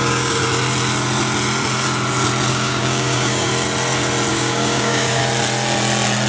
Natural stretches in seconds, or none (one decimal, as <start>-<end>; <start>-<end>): 0.4-2.5; 3.5-4.3; 5.2-6.3